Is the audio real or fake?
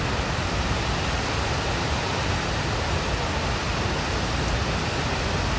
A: real